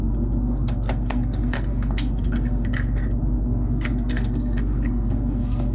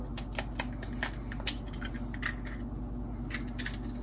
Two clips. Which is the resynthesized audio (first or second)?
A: first